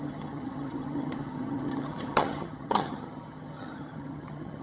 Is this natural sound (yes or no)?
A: no